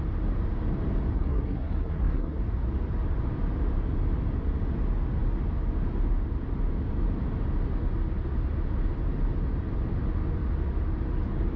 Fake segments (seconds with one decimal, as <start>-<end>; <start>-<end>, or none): 1.1-2.4